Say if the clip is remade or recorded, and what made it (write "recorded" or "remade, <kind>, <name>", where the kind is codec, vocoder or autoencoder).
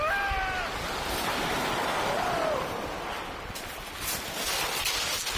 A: recorded